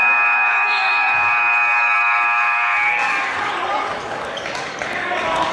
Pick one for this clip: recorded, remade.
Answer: remade